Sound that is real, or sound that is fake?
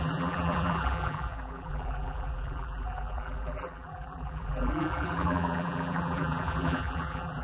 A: fake